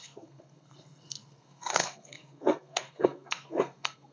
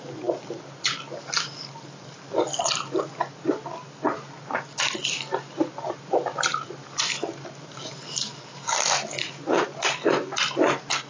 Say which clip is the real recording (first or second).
second